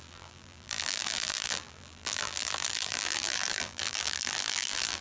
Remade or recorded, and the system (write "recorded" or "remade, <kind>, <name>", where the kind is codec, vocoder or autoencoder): remade, vocoder, BigVGAN v2